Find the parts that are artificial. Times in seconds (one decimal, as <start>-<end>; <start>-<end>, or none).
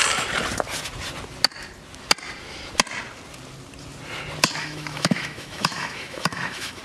4.6-6.8